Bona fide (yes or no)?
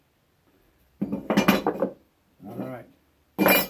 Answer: yes